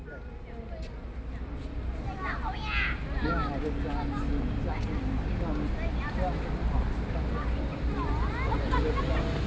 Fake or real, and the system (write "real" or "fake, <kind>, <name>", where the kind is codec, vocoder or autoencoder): real